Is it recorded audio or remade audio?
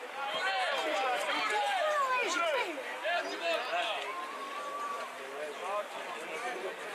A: recorded